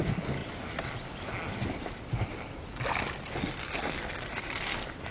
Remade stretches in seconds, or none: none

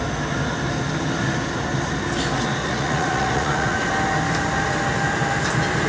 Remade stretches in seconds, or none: 2.6-3.9

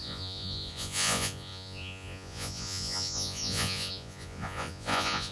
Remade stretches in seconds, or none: 0.0-5.3

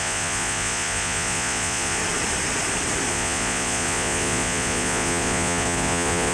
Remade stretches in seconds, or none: 0.0-2.0; 3.1-6.3